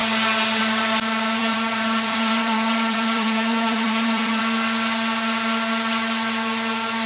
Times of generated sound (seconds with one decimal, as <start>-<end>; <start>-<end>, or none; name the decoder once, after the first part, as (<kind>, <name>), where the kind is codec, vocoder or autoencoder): 1.4-4.4 (vocoder, HiFi-GAN)